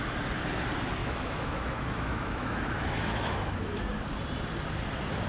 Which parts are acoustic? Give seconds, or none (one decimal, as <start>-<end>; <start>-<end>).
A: 0.0-1.0; 3.8-5.3